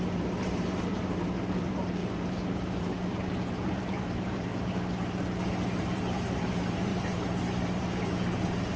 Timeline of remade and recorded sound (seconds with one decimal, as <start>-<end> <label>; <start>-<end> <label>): 0.0-4.5 remade; 4.5-5.8 recorded; 5.8-8.8 remade